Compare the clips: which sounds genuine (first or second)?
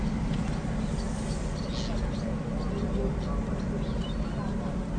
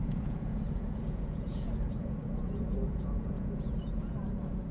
first